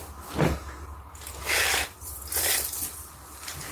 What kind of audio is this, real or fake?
real